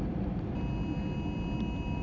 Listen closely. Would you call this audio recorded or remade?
recorded